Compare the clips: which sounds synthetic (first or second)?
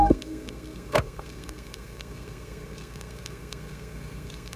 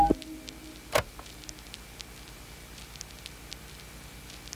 first